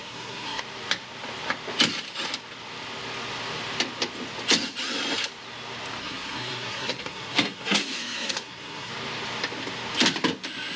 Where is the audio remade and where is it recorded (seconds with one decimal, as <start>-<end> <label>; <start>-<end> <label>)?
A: 0.0-0.6 remade; 0.6-6.0 recorded; 6.0-8.9 remade; 8.9-10.8 recorded